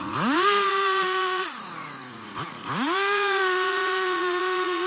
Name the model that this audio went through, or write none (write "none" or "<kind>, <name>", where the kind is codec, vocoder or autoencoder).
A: vocoder, Vocos